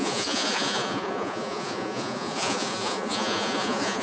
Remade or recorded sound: remade